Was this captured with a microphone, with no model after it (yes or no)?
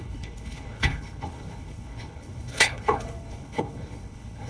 no